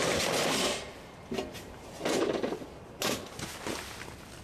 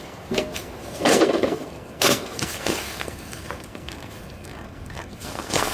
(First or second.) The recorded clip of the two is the first